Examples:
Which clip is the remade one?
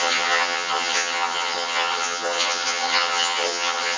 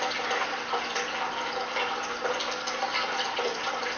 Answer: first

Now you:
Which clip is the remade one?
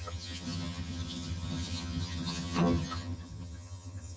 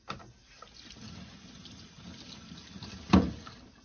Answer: first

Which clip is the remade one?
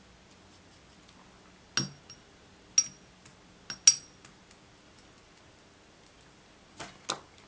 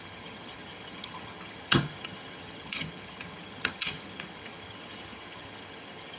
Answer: second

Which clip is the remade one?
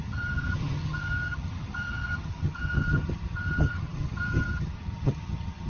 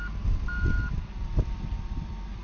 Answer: first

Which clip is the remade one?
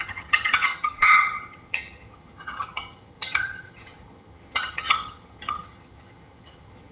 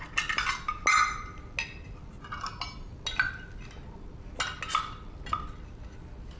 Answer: first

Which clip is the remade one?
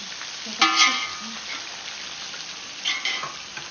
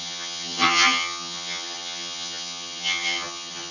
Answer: second